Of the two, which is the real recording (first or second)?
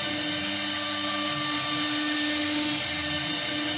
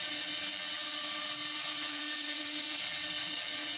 first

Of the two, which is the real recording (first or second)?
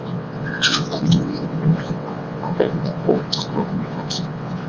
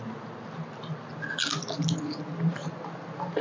second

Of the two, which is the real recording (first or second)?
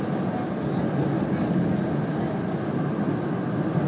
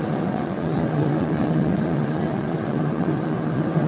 first